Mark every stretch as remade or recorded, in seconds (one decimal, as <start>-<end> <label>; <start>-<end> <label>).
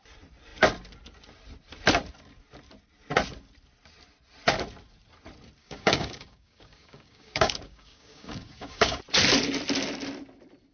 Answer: 0.0-5.6 recorded; 5.6-9.0 remade; 9.0-10.7 recorded